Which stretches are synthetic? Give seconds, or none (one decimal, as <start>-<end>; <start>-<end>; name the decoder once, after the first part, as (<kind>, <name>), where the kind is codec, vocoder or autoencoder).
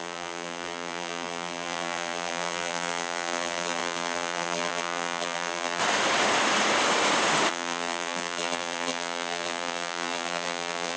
0.0-5.8 (vocoder, BigVGAN v2); 7.5-11.0